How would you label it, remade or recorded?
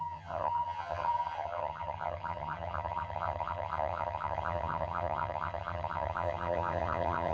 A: remade